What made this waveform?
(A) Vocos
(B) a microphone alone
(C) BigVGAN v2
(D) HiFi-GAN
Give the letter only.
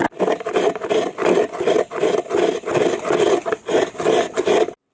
B